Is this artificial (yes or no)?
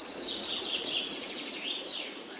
yes